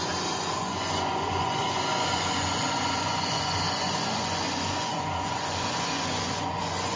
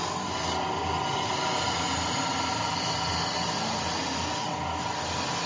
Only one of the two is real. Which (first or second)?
second